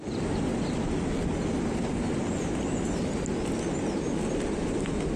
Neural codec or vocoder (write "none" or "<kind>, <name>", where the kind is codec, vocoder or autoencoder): none